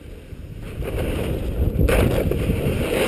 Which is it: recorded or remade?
recorded